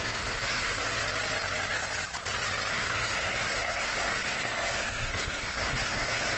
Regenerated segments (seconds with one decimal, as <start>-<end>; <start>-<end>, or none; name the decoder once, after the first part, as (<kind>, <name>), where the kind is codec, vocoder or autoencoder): 0.0-0.9 (codec, SNAC); 2.7-6.4